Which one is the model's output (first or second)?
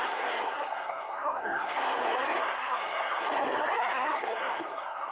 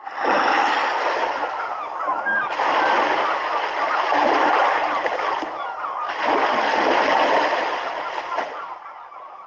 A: first